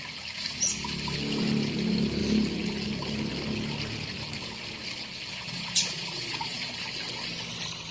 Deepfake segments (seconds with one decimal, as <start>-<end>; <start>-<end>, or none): 5.3-6.7